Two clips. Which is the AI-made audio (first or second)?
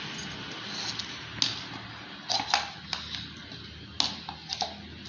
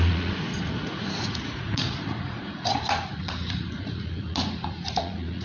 second